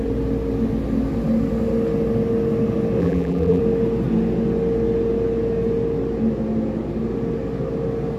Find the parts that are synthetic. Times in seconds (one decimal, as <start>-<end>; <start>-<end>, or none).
3.0-3.6